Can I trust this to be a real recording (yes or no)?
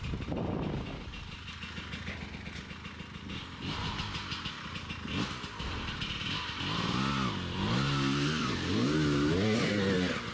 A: yes